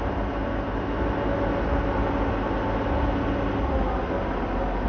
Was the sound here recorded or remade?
recorded